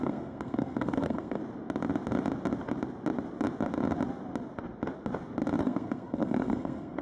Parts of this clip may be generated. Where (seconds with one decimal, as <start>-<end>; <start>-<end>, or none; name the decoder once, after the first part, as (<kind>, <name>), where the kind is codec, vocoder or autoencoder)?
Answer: 0.0-1.4 (codec, SNAC); 5.6-7.0